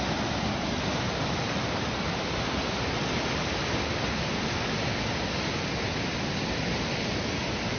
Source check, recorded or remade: recorded